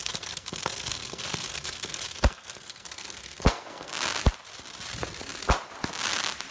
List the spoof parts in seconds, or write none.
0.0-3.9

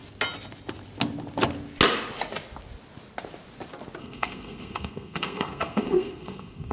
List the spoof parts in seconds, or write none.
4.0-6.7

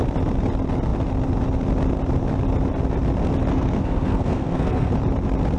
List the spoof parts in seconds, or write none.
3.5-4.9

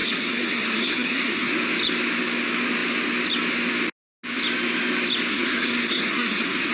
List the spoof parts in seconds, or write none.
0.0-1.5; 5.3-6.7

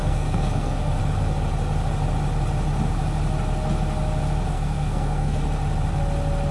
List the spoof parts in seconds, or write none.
0.0-1.0; 4.5-5.4

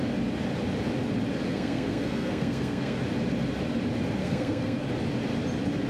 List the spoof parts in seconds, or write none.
1.5-3.0; 4.2-4.9

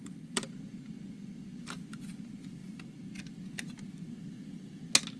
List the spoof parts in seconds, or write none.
none